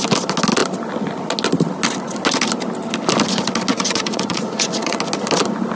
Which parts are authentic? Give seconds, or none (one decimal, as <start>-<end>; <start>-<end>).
0.0-3.7; 5.0-5.8